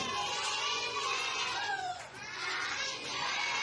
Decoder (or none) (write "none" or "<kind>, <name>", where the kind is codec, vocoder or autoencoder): vocoder, Vocos